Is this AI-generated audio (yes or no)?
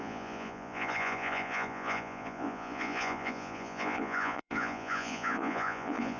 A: yes